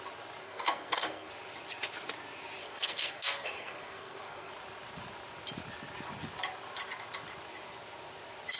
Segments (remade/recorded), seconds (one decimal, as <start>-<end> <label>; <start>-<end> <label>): 0.0-0.4 recorded; 0.4-1.3 remade; 1.3-2.6 recorded; 2.6-4.5 remade; 4.5-8.6 recorded